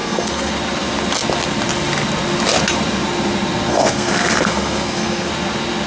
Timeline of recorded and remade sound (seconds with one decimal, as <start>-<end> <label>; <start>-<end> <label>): 0.0-0.5 remade; 0.5-3.7 recorded; 3.7-5.3 remade; 5.3-5.9 recorded